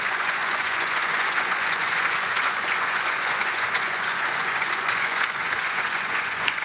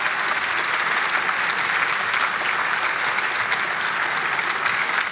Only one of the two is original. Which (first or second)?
second